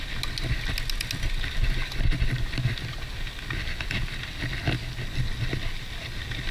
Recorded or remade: recorded